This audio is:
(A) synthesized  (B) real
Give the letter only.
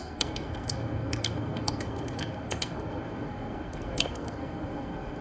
A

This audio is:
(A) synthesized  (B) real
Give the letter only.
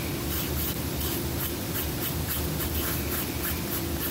B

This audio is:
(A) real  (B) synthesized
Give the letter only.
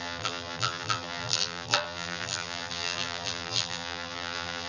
B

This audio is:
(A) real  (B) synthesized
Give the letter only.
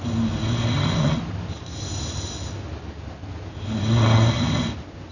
A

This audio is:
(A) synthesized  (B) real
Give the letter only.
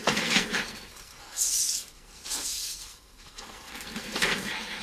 A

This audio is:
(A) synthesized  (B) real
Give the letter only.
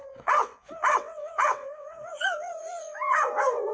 A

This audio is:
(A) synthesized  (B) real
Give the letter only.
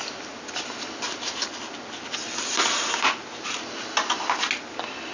B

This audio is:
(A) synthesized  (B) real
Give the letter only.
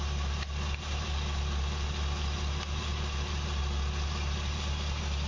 B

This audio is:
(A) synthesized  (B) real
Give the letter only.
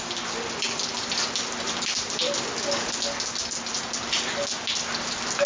B